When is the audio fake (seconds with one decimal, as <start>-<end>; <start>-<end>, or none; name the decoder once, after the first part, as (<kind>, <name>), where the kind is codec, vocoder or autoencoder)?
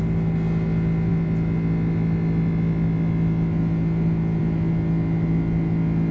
none